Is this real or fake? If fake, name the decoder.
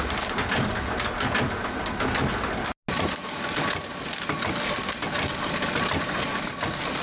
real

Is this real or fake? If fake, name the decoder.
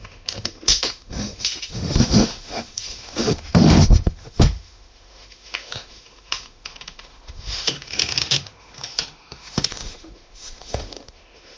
fake, autoencoder, DAC-VAE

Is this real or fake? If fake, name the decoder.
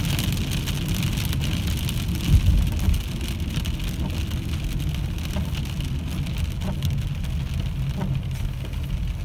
real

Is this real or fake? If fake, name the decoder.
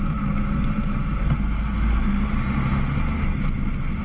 real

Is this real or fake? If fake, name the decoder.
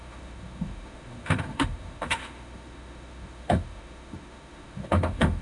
fake, autoencoder, DAC-VAE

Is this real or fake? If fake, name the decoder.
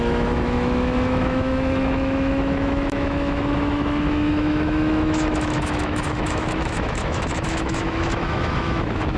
fake, autoencoder, DAC-VAE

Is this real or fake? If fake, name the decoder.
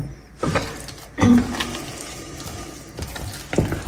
real